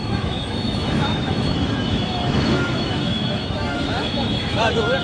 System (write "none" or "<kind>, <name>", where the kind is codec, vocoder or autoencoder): autoencoder, DAC-VAE